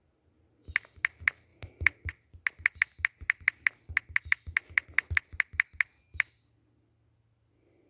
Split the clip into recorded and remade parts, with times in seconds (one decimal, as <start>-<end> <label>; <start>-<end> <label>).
0.0-7.9 recorded